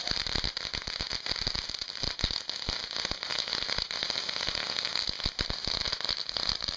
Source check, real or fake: real